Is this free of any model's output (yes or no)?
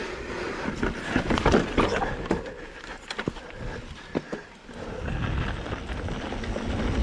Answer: yes